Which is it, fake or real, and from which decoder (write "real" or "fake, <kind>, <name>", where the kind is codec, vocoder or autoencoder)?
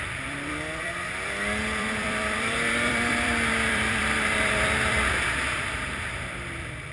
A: fake, vocoder, BigVGAN v2